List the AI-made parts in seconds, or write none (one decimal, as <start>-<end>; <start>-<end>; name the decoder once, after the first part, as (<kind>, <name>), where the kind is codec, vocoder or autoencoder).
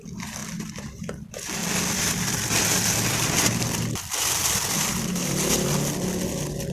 1.6-5.0 (vocoder, BigVGAN v2)